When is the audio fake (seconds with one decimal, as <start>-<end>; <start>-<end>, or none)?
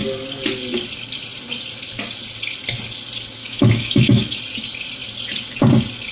3.4-4.4